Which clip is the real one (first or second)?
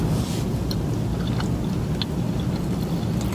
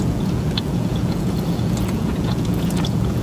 first